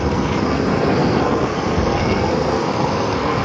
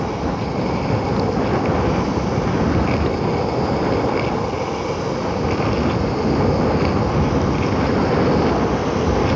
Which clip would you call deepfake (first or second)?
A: first